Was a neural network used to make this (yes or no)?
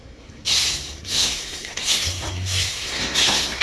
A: yes